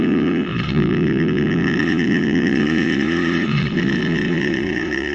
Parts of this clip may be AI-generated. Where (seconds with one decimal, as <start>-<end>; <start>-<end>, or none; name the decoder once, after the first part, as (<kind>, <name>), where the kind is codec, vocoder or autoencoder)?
0.0-5.1 (vocoder, Vocos)